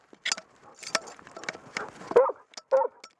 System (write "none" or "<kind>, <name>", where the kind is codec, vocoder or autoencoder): none